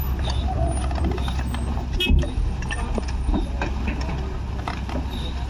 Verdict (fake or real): real